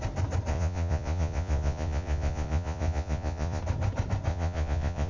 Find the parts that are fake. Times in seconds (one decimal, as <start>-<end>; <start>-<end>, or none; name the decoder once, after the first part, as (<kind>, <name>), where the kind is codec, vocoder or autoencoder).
0.5-3.6 (vocoder, Vocos); 4.3-5.1